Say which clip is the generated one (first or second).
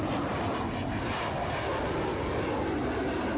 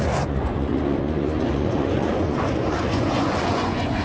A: second